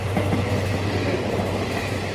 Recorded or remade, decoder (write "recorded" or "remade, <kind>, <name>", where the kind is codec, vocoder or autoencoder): recorded